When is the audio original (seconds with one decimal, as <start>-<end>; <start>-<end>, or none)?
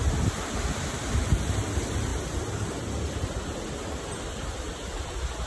0.0-5.5